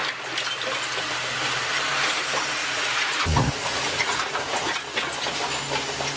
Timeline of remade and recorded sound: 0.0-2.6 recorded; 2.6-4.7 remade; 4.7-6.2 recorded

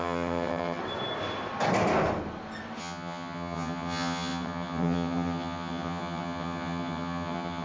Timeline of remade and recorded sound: 0.0-0.8 remade; 0.8-2.8 recorded; 2.8-7.6 remade

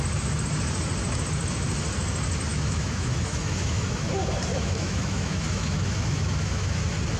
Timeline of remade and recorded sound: 0.0-2.5 recorded; 2.5-4.1 remade; 4.1-4.5 recorded; 4.5-6.8 remade; 6.8-7.2 recorded